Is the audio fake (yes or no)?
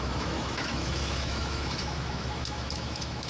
yes